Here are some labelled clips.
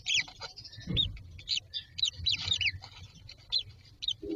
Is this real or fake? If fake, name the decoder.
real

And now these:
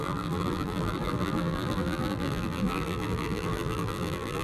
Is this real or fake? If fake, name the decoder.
fake, vocoder, BigVGAN v2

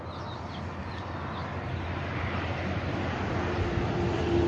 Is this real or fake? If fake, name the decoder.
real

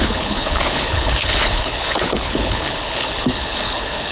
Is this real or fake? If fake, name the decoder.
fake, codec, HILCodec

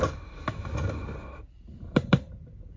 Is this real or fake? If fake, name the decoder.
real